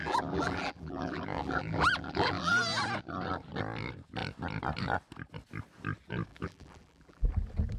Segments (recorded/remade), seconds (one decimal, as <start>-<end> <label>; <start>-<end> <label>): 0.0-2.5 remade; 2.5-6.3 recorded; 6.3-7.3 remade; 7.3-7.8 recorded